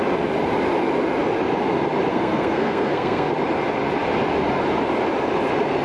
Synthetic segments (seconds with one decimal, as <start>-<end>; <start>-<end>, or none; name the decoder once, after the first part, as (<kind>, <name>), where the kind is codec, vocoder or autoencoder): 2.1-3.3 (codec, SNAC)